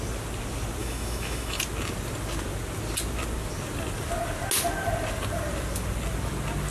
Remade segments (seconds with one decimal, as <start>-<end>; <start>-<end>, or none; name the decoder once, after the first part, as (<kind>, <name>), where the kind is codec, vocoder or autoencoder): 0.8-1.6 (autoencoder, DAC-VAE)